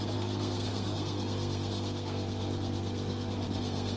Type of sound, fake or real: fake